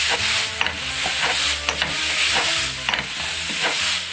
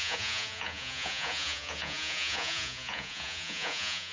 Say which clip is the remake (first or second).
second